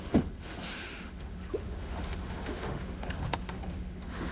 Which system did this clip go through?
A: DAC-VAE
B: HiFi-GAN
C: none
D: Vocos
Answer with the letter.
A